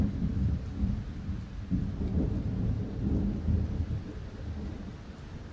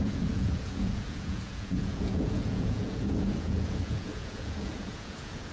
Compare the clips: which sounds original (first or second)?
first